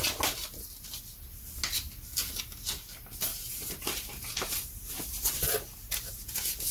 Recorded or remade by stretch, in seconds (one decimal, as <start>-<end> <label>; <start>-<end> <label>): 0.0-0.4 recorded; 0.4-1.0 remade; 1.0-3.3 recorded; 3.3-5.4 remade; 5.4-6.7 recorded